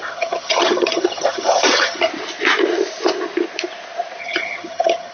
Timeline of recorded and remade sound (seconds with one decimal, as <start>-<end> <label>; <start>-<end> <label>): 0.0-2.1 remade; 2.1-4.2 recorded; 4.2-5.1 remade

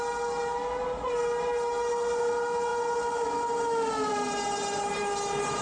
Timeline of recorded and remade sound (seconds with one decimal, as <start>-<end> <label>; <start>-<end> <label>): 0.0-5.6 recorded

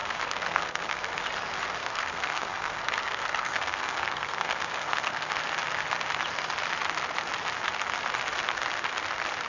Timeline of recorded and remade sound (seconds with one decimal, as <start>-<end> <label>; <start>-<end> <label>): 0.0-1.1 remade; 1.1-1.8 recorded; 1.8-5.3 remade; 5.3-9.5 recorded

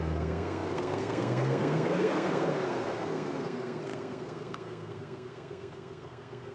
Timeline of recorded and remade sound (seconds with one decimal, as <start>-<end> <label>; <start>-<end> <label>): 0.0-6.5 remade

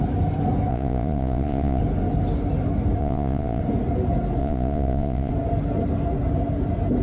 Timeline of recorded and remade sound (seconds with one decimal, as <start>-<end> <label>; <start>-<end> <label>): 0.0-0.7 recorded; 0.7-1.8 remade; 1.8-3.0 recorded; 3.0-3.6 remade; 3.6-4.4 recorded; 4.4-5.3 remade; 5.3-7.0 recorded

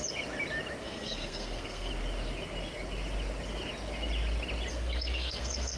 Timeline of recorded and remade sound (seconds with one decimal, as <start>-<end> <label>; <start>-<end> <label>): 0.0-0.8 recorded; 0.8-1.9 remade; 1.9-4.7 recorded; 4.7-5.8 remade